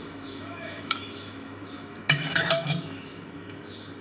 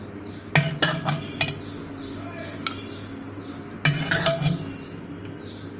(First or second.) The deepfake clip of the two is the first